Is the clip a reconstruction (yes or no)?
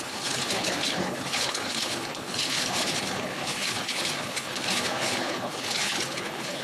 yes